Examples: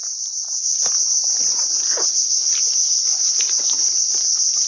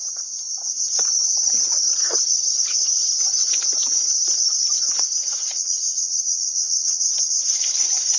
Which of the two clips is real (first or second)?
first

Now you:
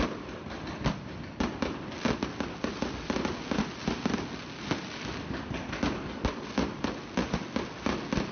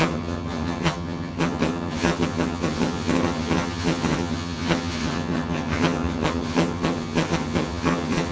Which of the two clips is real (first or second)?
first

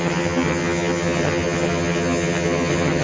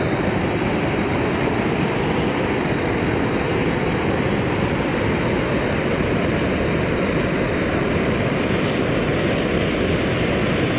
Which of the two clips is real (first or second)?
second